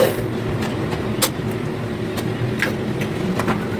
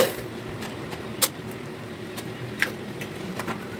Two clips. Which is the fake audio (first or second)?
second